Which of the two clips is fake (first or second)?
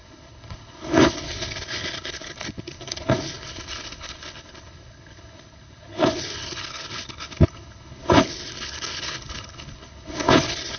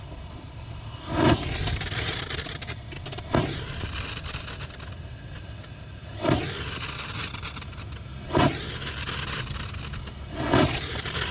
first